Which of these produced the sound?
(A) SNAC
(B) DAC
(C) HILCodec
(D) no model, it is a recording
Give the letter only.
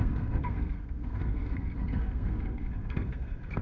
A